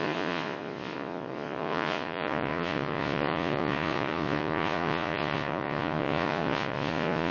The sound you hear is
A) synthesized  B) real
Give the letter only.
A